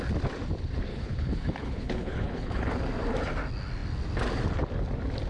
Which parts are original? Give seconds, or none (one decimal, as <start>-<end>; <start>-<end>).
0.0-0.9; 2.7-5.3